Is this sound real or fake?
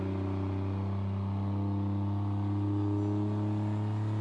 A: real